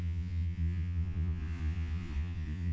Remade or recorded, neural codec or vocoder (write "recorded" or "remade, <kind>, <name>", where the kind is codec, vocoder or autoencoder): remade, vocoder, Vocos